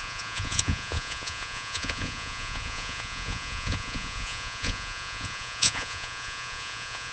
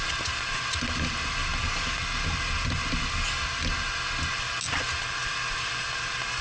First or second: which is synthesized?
first